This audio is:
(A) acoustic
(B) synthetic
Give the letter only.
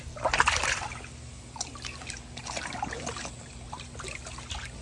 A